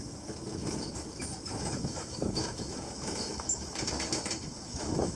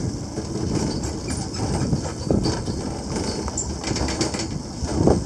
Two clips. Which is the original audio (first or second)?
second